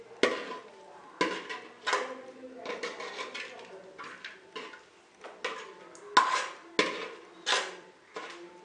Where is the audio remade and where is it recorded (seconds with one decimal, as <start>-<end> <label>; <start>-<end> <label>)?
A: 0.0-8.6 recorded